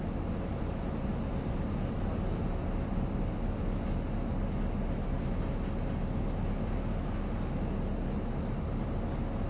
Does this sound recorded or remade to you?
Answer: recorded